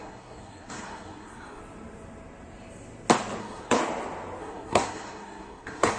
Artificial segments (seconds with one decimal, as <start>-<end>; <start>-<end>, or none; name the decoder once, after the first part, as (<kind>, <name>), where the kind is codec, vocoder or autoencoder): 0.0-1.6 (codec, SNAC); 3.4-3.8; 4.4-6.0